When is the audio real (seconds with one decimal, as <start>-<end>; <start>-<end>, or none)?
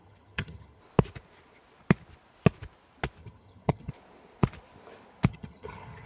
0.8-3.2; 3.9-5.3